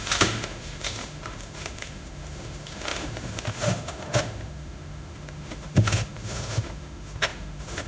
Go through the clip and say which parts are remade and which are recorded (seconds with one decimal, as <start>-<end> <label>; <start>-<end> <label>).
0.0-7.9 remade

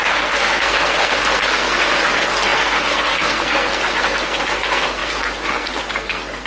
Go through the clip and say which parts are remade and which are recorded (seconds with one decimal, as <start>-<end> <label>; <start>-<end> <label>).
0.0-6.5 remade

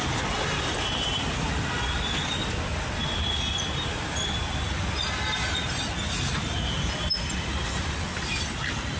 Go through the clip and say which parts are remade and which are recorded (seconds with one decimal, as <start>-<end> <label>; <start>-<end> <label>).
0.0-9.0 recorded

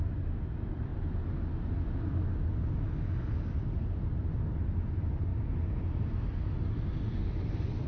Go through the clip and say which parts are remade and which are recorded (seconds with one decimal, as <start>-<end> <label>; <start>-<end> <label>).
0.0-7.9 recorded

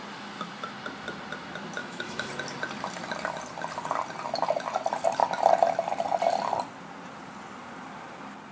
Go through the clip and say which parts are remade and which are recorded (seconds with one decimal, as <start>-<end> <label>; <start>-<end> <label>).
0.0-1.8 recorded; 1.8-2.3 remade; 2.3-8.5 recorded

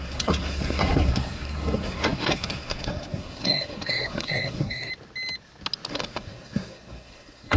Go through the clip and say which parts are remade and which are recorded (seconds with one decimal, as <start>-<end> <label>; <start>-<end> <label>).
0.0-4.9 remade; 4.9-5.9 recorded; 5.9-7.6 remade